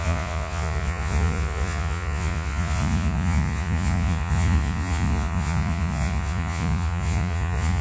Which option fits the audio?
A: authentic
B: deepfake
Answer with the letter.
B